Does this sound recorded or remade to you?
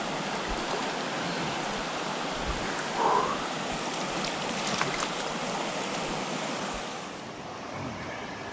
recorded